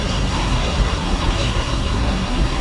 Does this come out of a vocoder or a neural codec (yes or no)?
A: yes